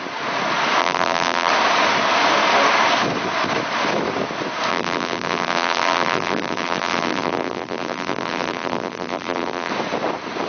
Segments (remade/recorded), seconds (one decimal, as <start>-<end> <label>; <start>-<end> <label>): 0.0-0.8 recorded; 0.8-1.5 remade; 1.5-4.7 recorded; 4.7-9.7 remade; 9.7-10.5 recorded